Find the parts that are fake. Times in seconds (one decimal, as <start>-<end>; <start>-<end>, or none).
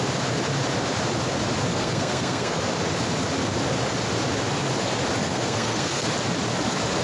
1.7-2.6; 5.2-6.0